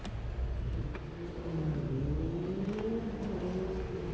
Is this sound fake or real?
real